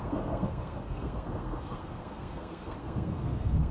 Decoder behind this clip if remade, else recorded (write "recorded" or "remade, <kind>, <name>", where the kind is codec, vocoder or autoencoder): remade, codec, SNAC